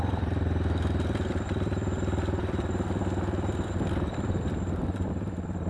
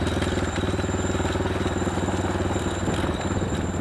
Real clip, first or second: second